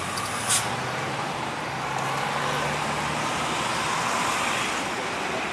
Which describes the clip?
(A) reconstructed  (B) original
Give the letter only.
B